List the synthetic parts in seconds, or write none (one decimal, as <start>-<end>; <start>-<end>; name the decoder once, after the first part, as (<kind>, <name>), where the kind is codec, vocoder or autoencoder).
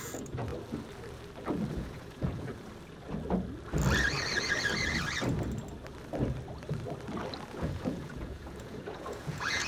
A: 0.0-0.5 (vocoder, Vocos); 1.7-2.5; 7.5-9.7